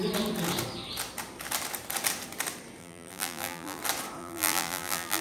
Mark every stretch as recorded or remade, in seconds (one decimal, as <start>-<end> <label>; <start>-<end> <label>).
0.0-2.8 recorded; 2.8-3.8 remade; 3.8-4.2 recorded; 4.2-5.2 remade